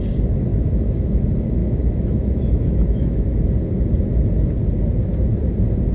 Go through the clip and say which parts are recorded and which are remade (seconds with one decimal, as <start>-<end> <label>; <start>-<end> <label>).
0.0-0.5 recorded; 0.5-1.2 remade; 1.2-1.6 recorded; 1.6-3.4 remade; 3.4-5.9 recorded